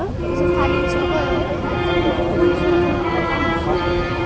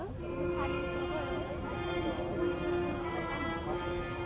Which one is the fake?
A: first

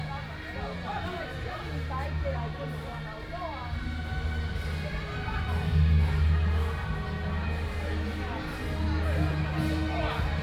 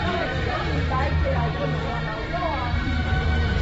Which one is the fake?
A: second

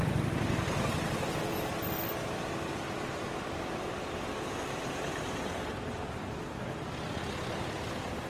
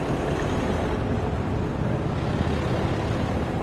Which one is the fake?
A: first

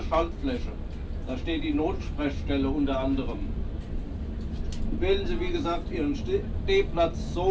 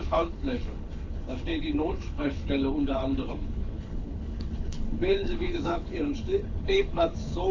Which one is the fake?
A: second